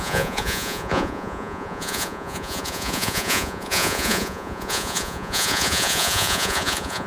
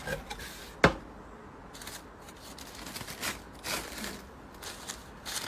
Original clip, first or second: second